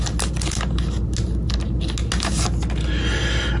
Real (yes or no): yes